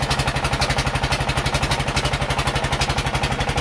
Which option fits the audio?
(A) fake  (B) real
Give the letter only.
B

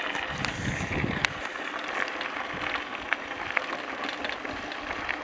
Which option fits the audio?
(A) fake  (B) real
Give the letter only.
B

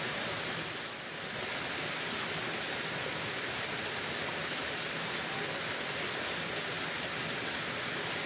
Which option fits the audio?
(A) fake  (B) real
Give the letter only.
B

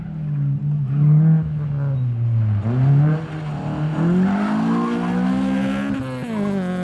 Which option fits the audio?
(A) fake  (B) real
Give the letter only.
B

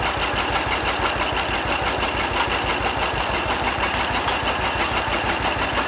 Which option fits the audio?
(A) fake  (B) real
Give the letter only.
B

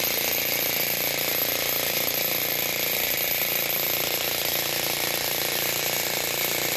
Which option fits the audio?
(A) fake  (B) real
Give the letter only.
B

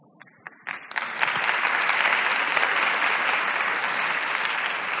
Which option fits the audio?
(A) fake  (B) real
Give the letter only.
B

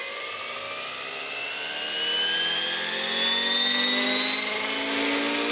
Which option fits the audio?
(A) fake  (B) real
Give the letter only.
B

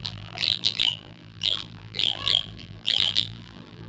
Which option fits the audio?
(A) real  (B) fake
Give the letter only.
B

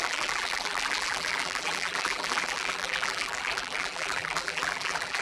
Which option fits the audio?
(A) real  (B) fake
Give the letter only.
B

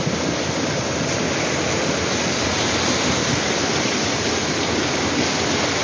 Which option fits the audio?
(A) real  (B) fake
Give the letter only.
A